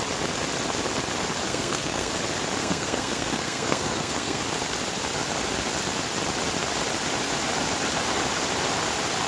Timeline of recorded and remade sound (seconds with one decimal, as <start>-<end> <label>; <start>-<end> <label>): 0.0-1.5 recorded; 1.5-2.1 remade; 2.1-2.6 recorded; 2.6-4.4 remade; 4.4-9.3 recorded